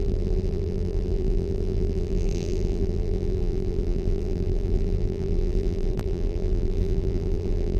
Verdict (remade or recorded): remade